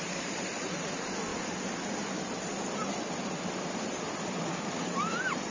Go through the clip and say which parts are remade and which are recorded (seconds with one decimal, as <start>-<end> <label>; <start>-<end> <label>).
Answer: 0.0-1.3 remade; 1.3-4.6 recorded; 4.6-5.5 remade